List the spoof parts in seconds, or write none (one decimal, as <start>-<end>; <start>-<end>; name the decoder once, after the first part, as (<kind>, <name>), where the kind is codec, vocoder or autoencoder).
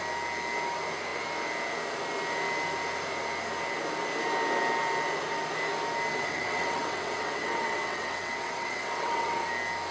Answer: 6.1-9.5 (vocoder, WaveNeXt)